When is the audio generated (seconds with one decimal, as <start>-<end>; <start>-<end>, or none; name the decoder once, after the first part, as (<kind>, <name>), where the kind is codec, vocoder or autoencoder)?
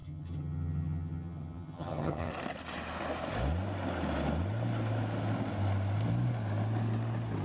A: 0.0-2.3 (vocoder, HiFi-GAN)